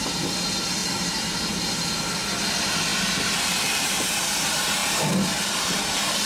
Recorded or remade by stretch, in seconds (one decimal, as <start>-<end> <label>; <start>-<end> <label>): 0.0-4.8 remade; 4.8-5.5 recorded; 5.5-6.3 remade